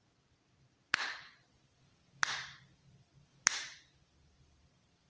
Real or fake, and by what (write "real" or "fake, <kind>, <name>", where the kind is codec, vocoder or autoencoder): real